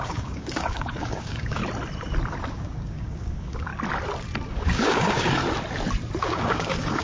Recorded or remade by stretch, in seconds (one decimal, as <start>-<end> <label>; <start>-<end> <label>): 0.0-1.6 remade; 1.6-2.5 recorded; 2.5-3.7 remade; 3.7-4.5 recorded; 4.5-5.4 remade; 5.4-6.2 recorded; 6.2-7.0 remade